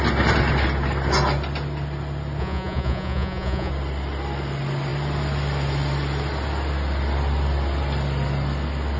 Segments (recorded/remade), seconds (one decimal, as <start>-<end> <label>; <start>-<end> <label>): 0.0-2.4 recorded; 2.4-3.7 remade; 3.7-9.0 recorded